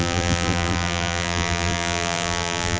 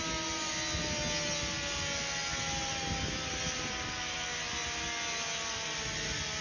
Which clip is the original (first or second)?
second